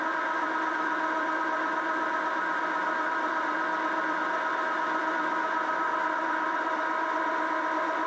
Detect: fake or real fake